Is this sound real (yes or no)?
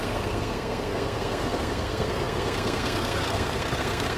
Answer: no